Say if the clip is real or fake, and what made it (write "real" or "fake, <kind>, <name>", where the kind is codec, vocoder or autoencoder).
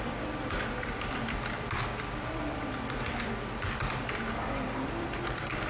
fake, vocoder, BigVGAN v2